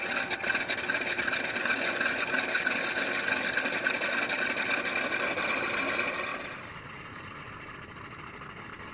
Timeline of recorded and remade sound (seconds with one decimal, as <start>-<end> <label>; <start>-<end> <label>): 0.0-1.6 recorded; 1.6-2.3 remade; 2.3-8.9 recorded